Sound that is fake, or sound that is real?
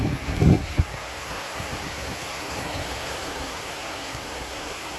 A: fake